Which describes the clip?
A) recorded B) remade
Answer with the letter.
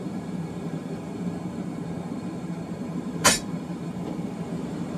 B